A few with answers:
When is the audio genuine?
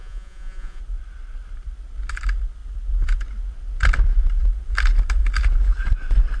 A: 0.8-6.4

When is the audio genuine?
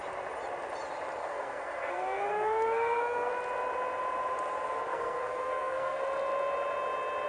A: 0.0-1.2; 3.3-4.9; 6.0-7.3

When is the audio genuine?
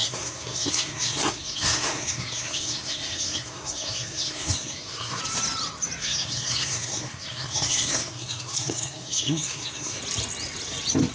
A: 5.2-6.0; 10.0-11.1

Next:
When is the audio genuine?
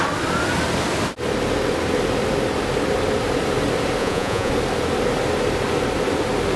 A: 0.0-4.0; 4.5-6.6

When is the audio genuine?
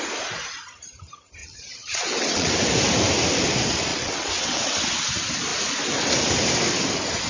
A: 0.0-1.4; 2.5-3.9; 4.8-7.3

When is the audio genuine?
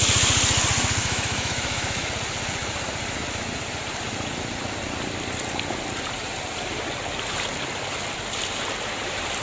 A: 0.0-1.0; 2.1-9.4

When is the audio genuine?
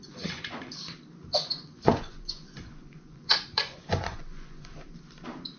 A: 0.6-1.3; 4.7-5.6